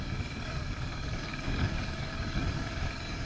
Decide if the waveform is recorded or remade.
remade